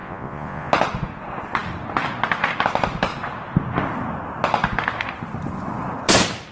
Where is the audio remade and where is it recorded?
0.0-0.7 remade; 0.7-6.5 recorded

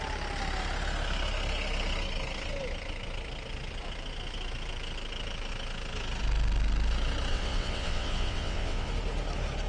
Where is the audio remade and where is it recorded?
0.0-7.3 recorded; 7.3-8.9 remade; 8.9-9.7 recorded

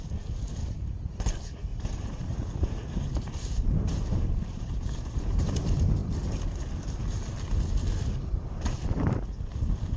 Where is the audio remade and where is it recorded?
0.0-0.6 recorded; 0.6-1.1 remade; 1.1-1.7 recorded; 1.7-5.5 remade; 5.5-10.0 recorded

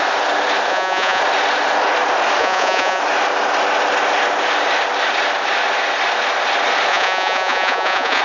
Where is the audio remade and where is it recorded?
0.0-0.7 recorded; 0.7-1.2 remade; 1.2-2.4 recorded; 2.4-3.0 remade; 3.0-6.9 recorded; 6.9-8.2 remade